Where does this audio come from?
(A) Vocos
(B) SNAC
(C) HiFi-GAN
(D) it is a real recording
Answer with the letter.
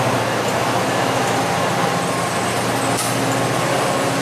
D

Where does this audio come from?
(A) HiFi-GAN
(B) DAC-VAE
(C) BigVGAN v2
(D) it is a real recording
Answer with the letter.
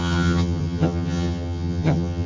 A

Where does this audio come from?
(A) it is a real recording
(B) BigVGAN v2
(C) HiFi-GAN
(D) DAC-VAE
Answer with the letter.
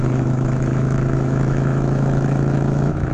D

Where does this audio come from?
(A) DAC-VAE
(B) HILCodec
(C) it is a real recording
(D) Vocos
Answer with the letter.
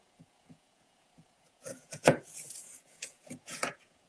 D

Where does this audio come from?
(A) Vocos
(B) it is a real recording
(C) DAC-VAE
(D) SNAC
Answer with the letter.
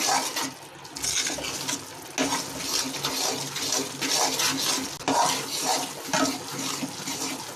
B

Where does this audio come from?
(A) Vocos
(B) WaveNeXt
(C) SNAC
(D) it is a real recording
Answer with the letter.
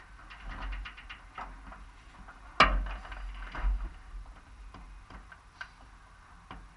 D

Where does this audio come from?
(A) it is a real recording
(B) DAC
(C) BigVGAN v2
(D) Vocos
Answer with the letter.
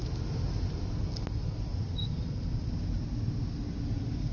A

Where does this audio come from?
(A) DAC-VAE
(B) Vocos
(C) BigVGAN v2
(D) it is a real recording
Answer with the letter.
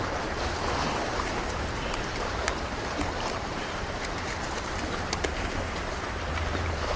C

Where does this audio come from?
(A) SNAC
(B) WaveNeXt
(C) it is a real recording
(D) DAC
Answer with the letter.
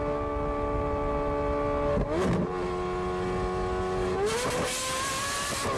C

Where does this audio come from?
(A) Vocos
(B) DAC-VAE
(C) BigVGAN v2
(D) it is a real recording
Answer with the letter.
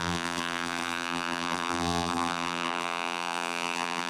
C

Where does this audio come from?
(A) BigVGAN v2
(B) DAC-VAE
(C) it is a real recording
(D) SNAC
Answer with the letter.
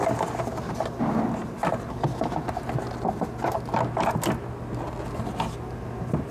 C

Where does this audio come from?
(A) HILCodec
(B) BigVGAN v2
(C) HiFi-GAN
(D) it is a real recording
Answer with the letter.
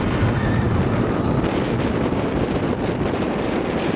B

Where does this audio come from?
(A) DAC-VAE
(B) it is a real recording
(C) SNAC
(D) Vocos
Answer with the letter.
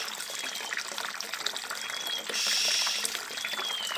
B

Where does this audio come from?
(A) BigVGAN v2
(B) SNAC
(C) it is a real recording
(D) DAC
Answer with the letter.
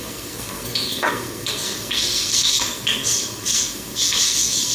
B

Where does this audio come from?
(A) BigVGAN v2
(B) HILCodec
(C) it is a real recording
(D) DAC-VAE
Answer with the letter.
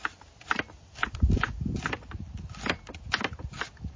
C